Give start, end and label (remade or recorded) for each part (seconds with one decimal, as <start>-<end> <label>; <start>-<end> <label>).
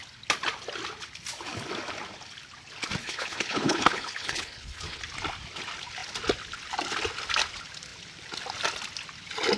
0.0-3.0 recorded; 3.0-5.0 remade; 5.0-9.6 recorded